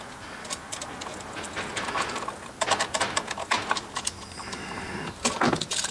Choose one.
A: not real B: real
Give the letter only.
A